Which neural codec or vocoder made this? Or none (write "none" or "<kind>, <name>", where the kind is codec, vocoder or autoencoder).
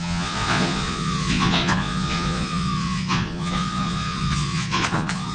vocoder, Vocos